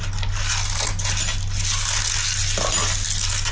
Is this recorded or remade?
recorded